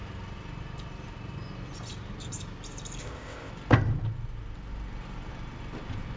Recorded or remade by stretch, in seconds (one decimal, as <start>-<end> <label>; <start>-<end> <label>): 0.0-3.0 recorded; 3.0-3.5 remade; 3.5-6.2 recorded